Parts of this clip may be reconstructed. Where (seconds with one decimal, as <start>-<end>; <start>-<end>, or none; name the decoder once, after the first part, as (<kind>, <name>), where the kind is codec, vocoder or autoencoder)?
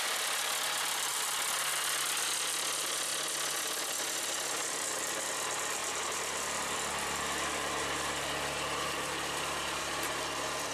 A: 0.0-1.1 (vocoder, BigVGAN v2); 2.2-3.1; 4.1-10.7